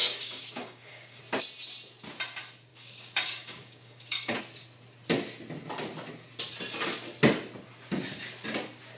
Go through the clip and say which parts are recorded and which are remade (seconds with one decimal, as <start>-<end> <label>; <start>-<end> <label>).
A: 0.0-1.2 remade; 1.2-2.7 recorded; 2.7-4.4 remade; 4.4-9.0 recorded